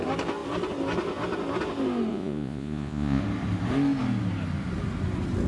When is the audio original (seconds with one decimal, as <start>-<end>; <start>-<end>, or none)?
0.0-2.1; 3.2-5.5